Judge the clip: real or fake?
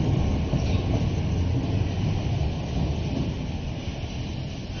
real